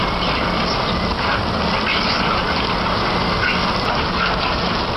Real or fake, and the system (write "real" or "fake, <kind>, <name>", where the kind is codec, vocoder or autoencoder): real